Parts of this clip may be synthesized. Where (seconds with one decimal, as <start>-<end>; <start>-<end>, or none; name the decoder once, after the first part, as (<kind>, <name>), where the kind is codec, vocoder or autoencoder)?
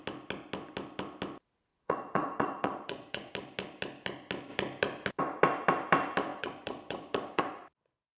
1.7-3.3 (vocoder, Vocos); 6.3-7.4